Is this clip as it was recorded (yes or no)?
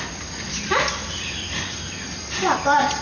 yes